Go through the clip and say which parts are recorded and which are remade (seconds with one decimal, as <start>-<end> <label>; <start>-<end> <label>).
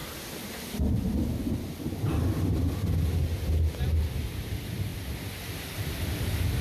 0.0-4.0 recorded; 4.0-6.6 remade